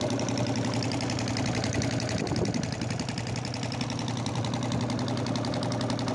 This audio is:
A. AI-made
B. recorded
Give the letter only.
B